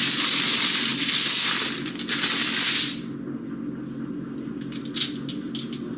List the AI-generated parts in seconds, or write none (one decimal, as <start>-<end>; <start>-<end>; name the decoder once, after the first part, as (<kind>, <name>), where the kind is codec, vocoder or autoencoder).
none

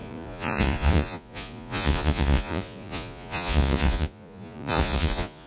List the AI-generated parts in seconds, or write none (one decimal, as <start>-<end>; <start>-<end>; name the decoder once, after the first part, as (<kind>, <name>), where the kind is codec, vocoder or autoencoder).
0.0-5.5 (vocoder, Vocos)

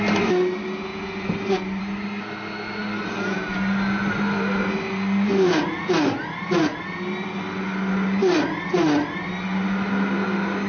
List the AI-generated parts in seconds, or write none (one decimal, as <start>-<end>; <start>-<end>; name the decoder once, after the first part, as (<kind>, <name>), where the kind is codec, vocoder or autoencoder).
none

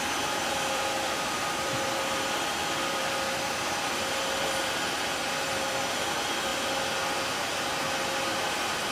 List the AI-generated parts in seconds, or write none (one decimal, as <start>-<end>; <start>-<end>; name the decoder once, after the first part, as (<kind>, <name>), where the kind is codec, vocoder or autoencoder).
0.0-6.5 (vocoder, BigVGAN v2); 8.4-8.9

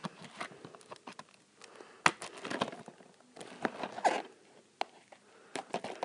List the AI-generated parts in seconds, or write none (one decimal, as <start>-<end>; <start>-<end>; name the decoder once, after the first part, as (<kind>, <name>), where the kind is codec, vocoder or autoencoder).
none

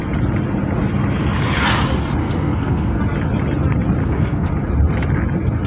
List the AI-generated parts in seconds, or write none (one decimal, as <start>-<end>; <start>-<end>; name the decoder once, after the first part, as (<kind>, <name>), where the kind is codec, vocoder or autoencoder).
2.2-3.0 (codec, SNAC); 4.0-4.5

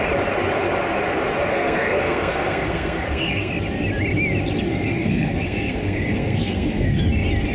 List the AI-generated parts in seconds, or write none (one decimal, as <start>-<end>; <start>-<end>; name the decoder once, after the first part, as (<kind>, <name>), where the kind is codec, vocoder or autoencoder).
1.5-3.5 (codec, SNAC); 4.7-7.0

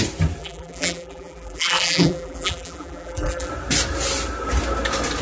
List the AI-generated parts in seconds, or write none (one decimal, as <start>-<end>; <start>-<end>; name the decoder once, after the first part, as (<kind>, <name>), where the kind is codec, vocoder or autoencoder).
0.4-3.5 (vocoder, BigVGAN v2)